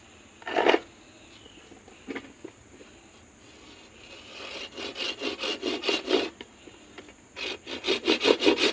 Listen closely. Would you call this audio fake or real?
real